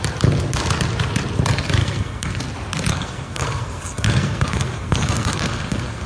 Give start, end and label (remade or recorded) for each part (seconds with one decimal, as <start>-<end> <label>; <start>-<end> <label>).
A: 0.0-1.8 recorded; 1.8-2.4 remade; 2.4-2.9 recorded; 2.9-6.1 remade

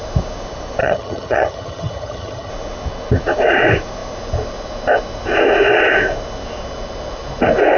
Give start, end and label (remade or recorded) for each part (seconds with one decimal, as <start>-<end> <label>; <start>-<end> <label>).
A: 0.0-0.8 recorded; 0.8-2.5 remade; 2.5-7.8 recorded